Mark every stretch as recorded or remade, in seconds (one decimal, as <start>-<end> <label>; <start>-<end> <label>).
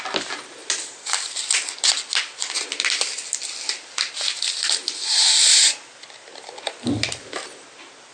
0.0-8.1 recorded